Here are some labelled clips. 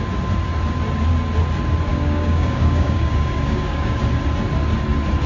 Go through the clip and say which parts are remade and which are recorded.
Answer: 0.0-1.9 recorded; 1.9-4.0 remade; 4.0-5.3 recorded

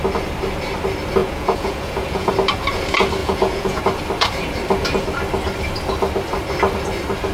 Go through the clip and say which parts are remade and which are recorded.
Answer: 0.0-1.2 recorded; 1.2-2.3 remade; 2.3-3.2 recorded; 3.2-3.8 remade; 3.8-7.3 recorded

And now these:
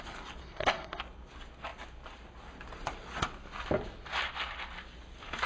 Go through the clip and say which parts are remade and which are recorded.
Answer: 0.0-0.4 recorded; 0.4-1.0 remade; 1.0-5.5 recorded